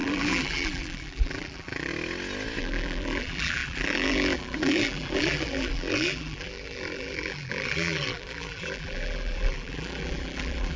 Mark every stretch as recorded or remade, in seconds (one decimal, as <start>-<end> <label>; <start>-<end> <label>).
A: 0.0-1.9 remade; 1.9-2.6 recorded; 2.6-10.8 remade